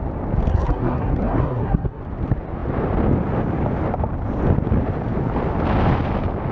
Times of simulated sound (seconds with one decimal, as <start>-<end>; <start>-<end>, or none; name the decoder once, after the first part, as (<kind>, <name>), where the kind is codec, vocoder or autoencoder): 0.5-2.0 (codec, SNAC)

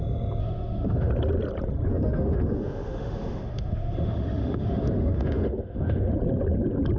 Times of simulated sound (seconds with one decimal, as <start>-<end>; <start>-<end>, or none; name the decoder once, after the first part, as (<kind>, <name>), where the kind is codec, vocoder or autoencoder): 0.4-1.1 (autoencoder, DAC-VAE); 1.9-6.1

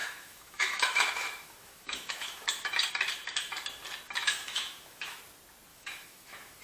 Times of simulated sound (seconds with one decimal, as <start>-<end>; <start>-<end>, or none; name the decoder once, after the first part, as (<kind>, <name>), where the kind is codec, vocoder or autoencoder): 0.0-2.9 (autoencoder, DAC-VAE); 4.2-5.2; 5.7-6.6

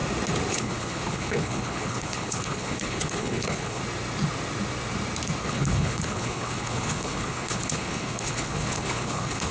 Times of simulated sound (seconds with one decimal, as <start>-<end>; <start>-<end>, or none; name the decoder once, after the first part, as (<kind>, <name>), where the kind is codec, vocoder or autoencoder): 0.5-3.8 (codec, HILCodec); 5.4-9.5

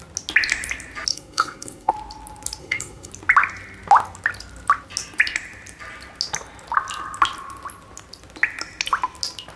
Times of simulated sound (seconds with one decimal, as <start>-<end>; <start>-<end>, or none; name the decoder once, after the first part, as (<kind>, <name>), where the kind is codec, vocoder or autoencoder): 1.1-1.9 (codec, SNAC); 2.6-3.1

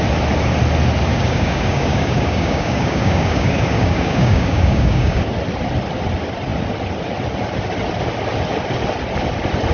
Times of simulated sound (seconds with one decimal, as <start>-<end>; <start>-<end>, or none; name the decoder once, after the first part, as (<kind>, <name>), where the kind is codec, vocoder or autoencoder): 1.1-5.2 (codec, DAC)